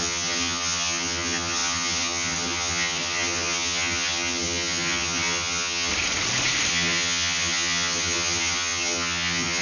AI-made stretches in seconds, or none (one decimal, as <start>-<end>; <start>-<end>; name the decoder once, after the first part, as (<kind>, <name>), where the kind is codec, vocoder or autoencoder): 0.0-5.9 (vocoder, HiFi-GAN); 6.7-9.6